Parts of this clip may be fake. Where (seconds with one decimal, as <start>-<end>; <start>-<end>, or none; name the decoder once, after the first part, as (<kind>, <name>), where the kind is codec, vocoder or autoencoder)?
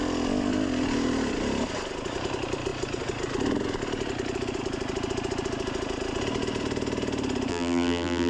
7.5-8.3 (vocoder, BigVGAN v2)